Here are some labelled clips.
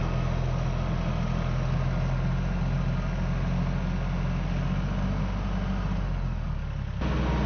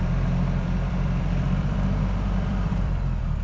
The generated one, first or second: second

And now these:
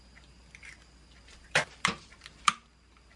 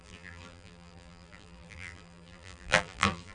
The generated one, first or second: second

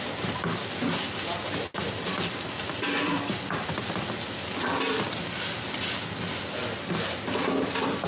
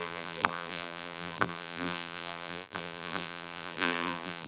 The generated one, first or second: second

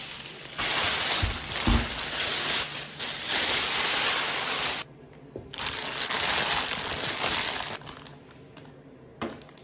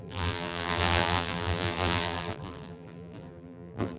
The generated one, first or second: second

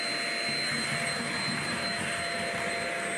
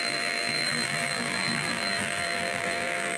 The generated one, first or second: second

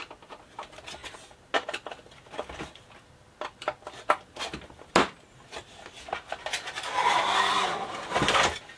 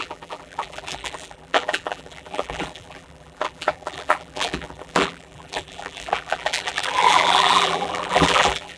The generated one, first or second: second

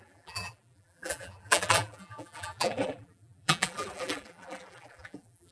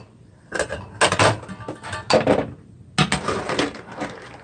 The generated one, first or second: first